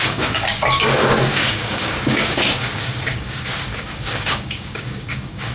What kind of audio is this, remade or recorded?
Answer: remade